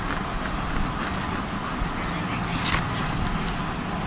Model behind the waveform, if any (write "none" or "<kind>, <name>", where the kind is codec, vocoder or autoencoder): none